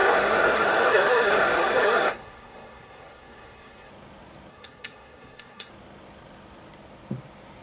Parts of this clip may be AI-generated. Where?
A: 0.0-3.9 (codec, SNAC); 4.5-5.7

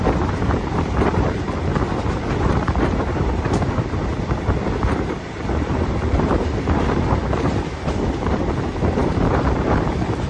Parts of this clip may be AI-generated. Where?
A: 0.0-1.7 (vocoder, BigVGAN v2); 2.3-4.1; 4.8-10.3